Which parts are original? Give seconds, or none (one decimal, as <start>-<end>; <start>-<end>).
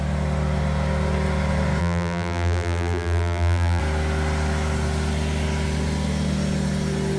0.0-1.8; 3.8-7.2